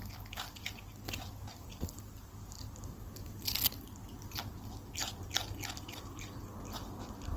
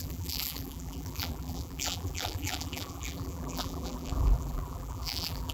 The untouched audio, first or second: first